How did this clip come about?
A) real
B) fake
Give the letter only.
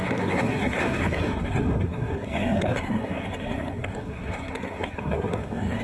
B